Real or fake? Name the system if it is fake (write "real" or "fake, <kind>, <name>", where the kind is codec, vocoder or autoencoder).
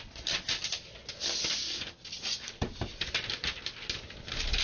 real